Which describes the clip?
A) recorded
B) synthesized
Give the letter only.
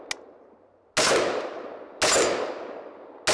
A